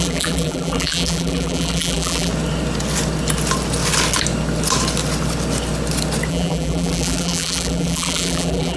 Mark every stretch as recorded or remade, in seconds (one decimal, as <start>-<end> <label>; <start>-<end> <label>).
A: 0.0-2.3 remade; 2.3-6.3 recorded; 6.3-8.8 remade